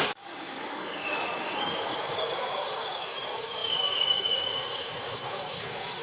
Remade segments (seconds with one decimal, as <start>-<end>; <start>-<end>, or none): 0.0-6.0